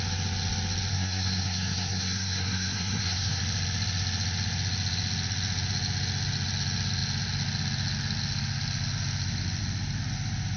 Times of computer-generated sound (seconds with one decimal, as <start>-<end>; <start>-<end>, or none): 0.9-3.4